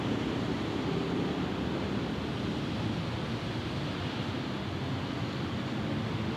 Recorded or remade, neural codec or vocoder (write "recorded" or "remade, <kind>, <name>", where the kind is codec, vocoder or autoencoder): recorded